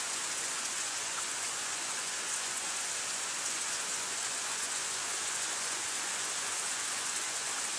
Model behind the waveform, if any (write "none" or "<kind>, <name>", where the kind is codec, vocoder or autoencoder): vocoder, Vocos